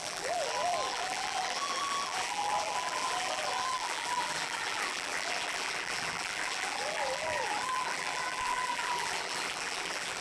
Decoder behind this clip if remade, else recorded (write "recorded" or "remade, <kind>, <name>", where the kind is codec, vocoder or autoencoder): remade, vocoder, BigVGAN v2